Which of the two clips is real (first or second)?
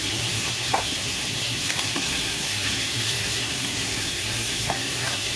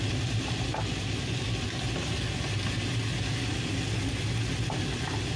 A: second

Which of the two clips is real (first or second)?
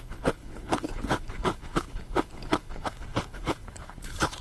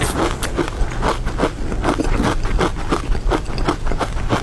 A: second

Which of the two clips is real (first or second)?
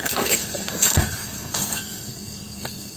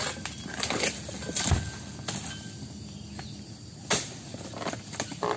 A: second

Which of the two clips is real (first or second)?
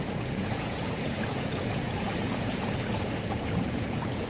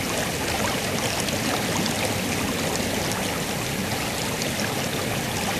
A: second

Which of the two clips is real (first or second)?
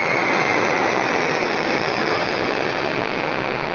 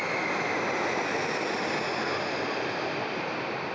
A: second